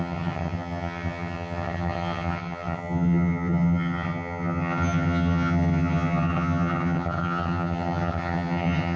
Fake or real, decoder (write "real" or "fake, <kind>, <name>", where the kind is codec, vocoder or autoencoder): fake, vocoder, HiFi-GAN